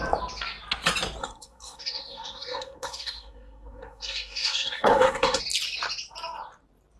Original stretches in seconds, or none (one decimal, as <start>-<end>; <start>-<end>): 0.0-1.2; 5.4-7.0